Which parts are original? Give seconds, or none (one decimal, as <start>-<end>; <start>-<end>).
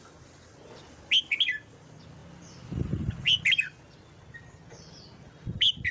0.0-5.9